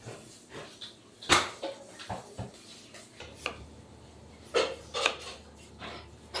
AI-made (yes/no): no